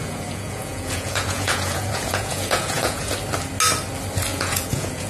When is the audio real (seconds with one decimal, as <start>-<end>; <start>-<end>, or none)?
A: 3.1-4.3